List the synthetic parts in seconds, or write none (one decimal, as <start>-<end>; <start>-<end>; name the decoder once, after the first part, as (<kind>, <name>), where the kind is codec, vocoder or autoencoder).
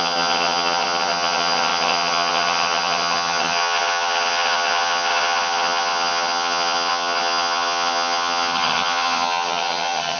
0.0-10.2 (vocoder, HiFi-GAN)